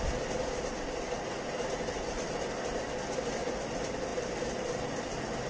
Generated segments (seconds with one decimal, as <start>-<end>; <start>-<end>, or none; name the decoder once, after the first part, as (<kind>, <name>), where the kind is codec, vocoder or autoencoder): none